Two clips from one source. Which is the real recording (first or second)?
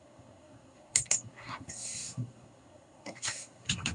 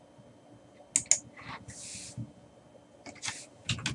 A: second